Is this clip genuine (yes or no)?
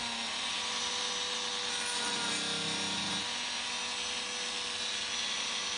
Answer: yes